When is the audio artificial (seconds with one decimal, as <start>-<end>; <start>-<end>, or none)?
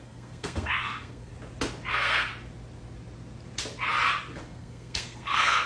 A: 0.0-1.3; 1.9-2.3; 4.4-5.7